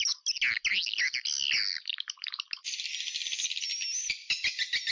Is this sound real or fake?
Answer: real